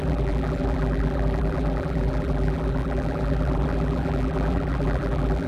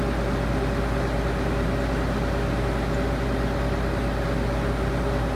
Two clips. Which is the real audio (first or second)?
second